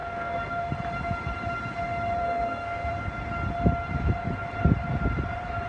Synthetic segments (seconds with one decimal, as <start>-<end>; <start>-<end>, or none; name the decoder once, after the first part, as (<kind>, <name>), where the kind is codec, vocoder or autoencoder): 0.0-0.7 (codec, SNAC); 2.2-2.9